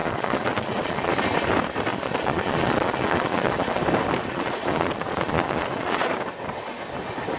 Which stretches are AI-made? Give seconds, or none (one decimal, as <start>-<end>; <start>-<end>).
0.0-1.1; 1.9-3.8; 4.2-6.1